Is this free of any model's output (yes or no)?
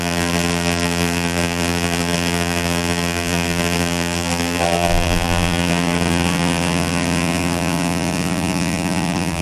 no